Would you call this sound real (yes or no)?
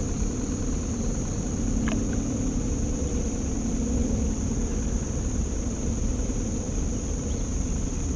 yes